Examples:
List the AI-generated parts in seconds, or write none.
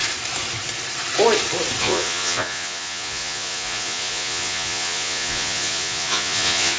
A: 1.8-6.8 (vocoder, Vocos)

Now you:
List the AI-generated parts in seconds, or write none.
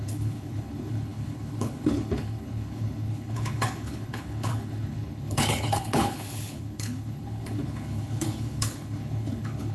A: 0.0-9.7 (codec, HILCodec)